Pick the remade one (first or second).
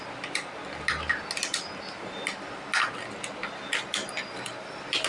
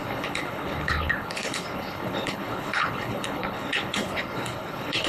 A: second